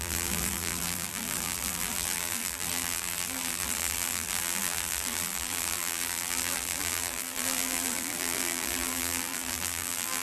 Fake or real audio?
fake